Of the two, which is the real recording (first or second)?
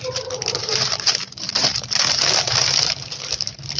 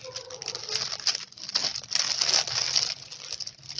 second